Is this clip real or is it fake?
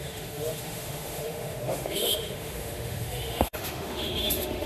fake